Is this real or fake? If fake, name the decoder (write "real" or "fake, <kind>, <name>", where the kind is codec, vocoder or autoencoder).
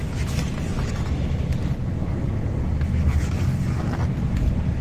real